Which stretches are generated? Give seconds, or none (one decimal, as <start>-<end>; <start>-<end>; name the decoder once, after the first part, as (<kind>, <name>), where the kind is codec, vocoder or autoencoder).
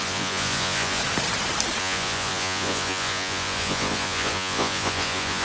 0.0-1.0 (vocoder, Vocos); 1.8-5.4